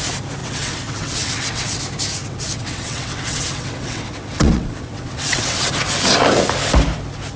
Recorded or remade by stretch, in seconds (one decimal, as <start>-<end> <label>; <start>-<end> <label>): 0.0-0.4 recorded; 0.4-1.8 remade; 1.8-2.2 recorded; 2.2-5.7 remade; 5.7-7.4 recorded